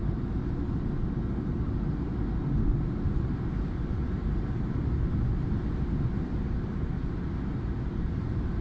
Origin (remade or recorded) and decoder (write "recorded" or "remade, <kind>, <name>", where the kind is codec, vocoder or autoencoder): recorded